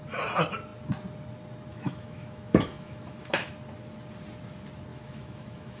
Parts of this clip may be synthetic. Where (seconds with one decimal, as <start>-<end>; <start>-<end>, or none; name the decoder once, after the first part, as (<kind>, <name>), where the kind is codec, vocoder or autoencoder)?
1.7-3.5 (autoencoder, DAC-VAE); 4.9-5.8